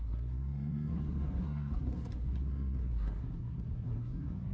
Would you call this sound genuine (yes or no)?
no